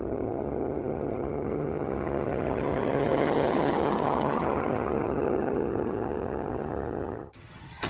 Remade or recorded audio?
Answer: remade